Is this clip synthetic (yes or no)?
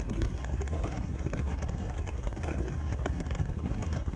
yes